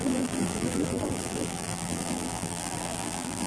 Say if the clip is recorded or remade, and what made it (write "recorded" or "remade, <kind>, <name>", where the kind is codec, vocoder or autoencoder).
remade, vocoder, BigVGAN v2